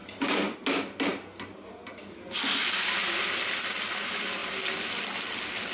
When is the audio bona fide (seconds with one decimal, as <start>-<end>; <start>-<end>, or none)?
0.0-5.7